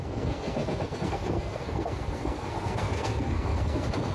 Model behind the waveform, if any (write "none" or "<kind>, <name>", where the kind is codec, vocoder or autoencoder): codec, SNAC